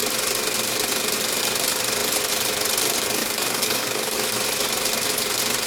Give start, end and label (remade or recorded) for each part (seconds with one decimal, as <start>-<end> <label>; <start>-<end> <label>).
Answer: 0.0-3.2 recorded; 3.2-4.3 remade; 4.3-5.7 recorded